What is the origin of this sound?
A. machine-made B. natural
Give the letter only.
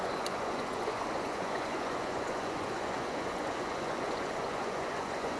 A